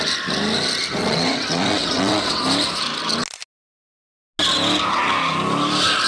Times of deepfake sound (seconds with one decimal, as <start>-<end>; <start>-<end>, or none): 1.0-2.4